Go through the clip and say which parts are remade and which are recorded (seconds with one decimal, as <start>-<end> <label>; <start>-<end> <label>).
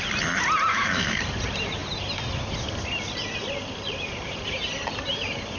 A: 0.0-0.7 recorded; 0.7-1.2 remade; 1.2-5.6 recorded